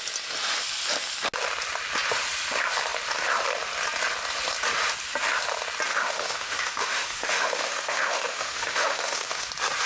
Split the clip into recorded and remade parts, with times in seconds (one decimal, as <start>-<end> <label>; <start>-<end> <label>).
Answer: 0.0-5.9 recorded; 5.9-9.5 remade; 9.5-9.9 recorded